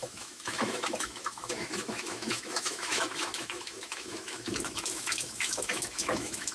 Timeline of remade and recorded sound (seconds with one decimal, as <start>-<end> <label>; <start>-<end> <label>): 0.0-6.5 remade